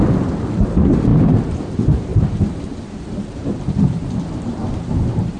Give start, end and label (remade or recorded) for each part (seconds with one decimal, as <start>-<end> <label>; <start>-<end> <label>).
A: 0.0-5.4 remade